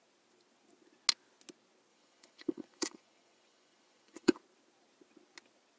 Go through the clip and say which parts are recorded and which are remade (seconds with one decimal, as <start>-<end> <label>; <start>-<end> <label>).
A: 0.0-1.9 recorded; 1.9-4.4 remade; 4.4-5.8 recorded